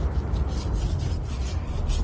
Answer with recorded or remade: recorded